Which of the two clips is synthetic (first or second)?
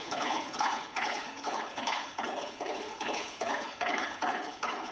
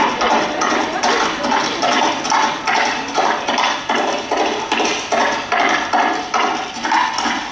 first